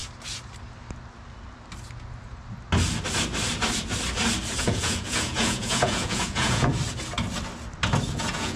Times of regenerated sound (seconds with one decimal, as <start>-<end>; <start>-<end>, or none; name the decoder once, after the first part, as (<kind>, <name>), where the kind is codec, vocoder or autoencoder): 4.6-6.7 (vocoder, Vocos); 8.1-8.6